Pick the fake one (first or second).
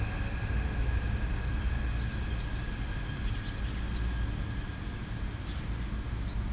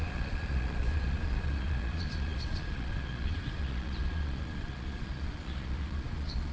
second